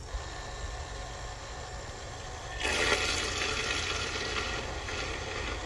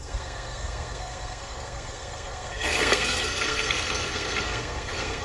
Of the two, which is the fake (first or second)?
second